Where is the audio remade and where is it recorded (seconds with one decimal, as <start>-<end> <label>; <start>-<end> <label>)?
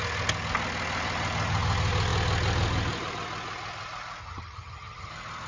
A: 0.0-4.2 recorded; 4.2-5.1 remade; 5.1-5.5 recorded